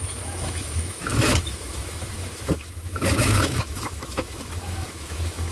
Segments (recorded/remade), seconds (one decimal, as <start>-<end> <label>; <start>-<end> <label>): 0.0-5.5 remade